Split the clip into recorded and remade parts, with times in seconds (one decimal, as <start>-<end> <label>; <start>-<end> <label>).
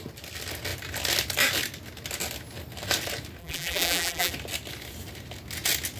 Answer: 0.0-3.4 recorded; 3.4-4.3 remade; 4.3-6.0 recorded